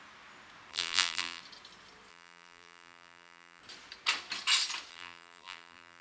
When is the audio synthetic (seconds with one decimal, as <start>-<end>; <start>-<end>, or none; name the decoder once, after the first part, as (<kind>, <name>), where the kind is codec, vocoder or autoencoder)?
0.7-1.4 (vocoder, BigVGAN v2); 2.1-3.6; 4.9-6.0